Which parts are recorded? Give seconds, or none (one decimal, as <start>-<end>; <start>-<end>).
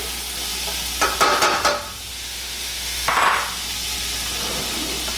0.0-2.1; 3.1-5.2